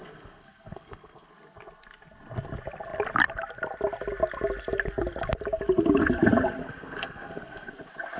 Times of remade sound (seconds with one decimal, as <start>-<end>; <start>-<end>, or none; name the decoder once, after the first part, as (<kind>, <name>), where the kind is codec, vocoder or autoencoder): 0.0-1.3 (codec, SNAC); 6.6-7.7